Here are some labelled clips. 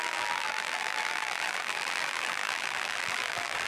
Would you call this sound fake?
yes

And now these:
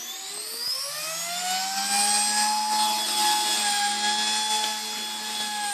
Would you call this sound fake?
no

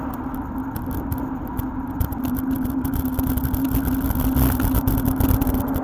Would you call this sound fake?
no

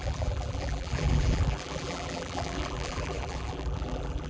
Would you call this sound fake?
yes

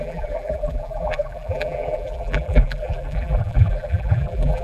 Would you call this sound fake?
yes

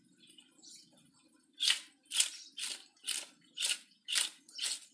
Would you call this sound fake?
no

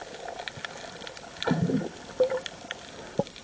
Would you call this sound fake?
no